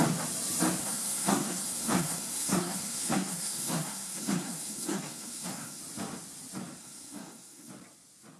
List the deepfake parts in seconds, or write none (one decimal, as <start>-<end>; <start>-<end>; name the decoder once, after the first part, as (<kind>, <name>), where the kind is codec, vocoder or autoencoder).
0.8-5.8 (codec, SNAC); 6.8-7.7